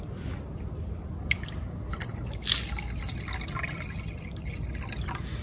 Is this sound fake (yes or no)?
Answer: no